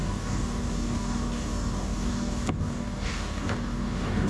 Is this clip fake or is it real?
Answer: fake